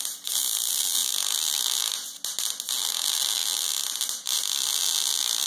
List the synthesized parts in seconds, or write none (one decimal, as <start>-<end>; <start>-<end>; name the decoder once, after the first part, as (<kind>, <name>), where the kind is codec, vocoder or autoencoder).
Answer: none